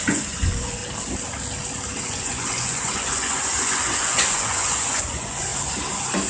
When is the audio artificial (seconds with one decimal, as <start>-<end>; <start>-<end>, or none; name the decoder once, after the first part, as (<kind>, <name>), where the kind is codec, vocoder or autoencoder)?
0.0-0.8 (vocoder, Vocos); 2.0-5.5